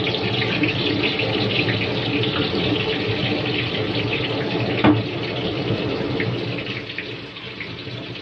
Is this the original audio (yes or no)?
yes